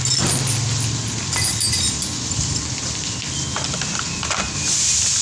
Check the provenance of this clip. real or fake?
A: real